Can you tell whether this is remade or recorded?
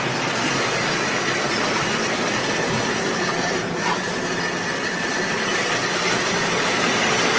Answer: recorded